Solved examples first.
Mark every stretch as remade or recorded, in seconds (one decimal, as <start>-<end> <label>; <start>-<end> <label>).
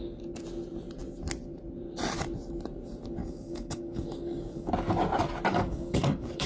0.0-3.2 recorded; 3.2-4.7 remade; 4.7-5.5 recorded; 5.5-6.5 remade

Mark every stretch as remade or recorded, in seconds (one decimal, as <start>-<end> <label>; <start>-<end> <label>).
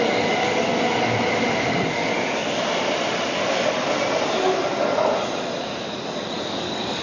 0.0-0.7 remade; 0.7-1.7 recorded; 1.7-2.1 remade; 2.1-6.3 recorded; 6.3-7.0 remade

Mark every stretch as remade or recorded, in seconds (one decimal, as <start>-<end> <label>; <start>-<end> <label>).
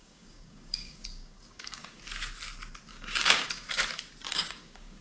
0.0-2.0 remade; 2.0-2.9 recorded; 2.9-3.8 remade; 3.8-4.3 recorded; 4.3-5.0 remade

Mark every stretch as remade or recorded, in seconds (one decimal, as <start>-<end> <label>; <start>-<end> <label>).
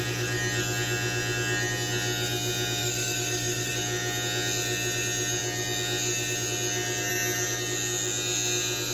0.0-2.8 recorded; 2.8-3.7 remade; 3.7-8.9 recorded